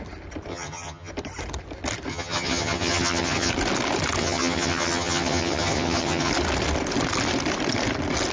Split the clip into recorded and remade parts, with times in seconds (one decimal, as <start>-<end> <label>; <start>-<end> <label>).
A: 0.0-0.5 recorded; 0.5-1.1 remade; 1.1-2.1 recorded; 2.1-3.5 remade; 3.5-4.2 recorded; 4.2-6.3 remade; 6.3-8.3 recorded